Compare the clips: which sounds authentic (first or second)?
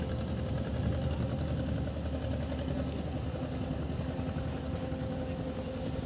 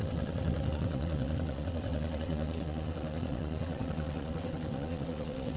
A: first